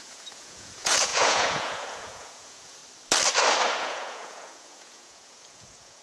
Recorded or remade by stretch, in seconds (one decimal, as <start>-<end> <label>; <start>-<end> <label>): 0.0-2.8 remade; 2.8-3.8 recorded; 3.8-6.0 remade